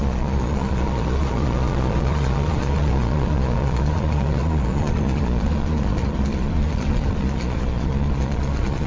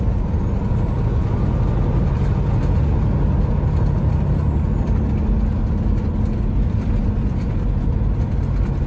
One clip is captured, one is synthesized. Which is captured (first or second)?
second